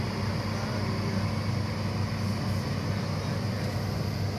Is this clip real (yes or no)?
yes